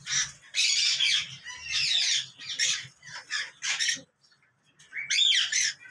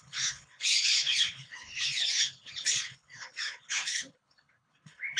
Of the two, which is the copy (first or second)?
second